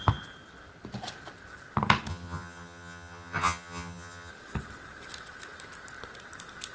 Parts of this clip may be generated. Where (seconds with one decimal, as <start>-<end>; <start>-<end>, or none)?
2.1-4.3